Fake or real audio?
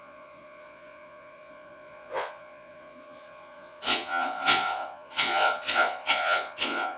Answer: fake